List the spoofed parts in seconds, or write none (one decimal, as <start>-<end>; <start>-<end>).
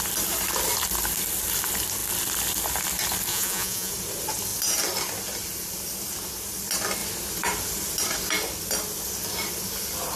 3.3-3.9